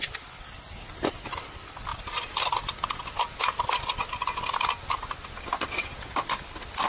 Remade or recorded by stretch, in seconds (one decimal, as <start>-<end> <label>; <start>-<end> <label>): 0.0-6.9 recorded